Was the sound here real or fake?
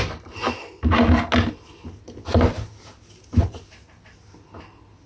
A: real